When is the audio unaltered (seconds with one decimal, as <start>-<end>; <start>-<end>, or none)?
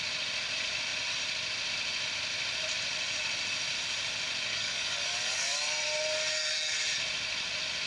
0.0-4.5; 5.6-7.9